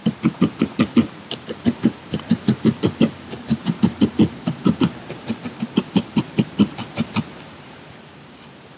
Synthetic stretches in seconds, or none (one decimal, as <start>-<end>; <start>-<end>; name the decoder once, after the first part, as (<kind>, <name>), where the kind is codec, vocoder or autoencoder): 0.0-4.2 (vocoder, BigVGAN v2); 5.0-8.8